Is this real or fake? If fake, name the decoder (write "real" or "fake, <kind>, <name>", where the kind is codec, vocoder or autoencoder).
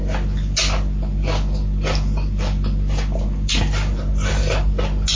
real